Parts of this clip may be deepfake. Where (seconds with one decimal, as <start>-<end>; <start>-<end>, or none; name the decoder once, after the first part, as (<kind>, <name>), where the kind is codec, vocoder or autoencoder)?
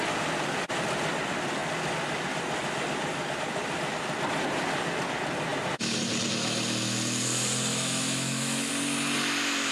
7.7-8.7 (autoencoder, DAC-VAE)